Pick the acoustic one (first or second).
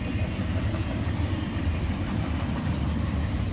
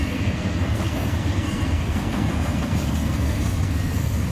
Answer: first